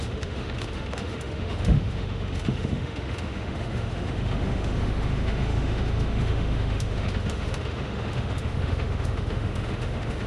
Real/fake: fake